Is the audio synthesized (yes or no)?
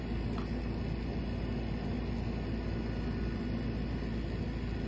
no